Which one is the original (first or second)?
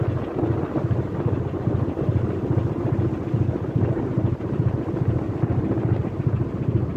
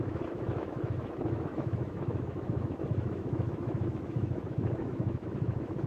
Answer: first